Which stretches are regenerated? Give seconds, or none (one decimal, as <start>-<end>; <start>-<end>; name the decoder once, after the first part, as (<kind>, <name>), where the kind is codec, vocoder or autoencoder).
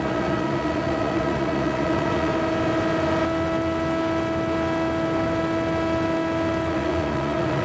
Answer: 0.0-2.3 (vocoder, Vocos); 6.7-7.6